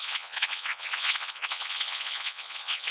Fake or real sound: fake